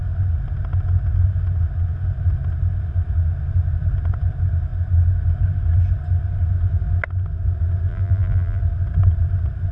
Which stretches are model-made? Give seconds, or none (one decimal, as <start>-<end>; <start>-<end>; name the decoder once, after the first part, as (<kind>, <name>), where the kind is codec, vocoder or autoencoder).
7.9-8.6 (vocoder, BigVGAN v2)